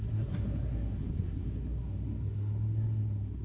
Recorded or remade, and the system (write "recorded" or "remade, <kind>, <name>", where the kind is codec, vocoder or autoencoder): remade, codec, SNAC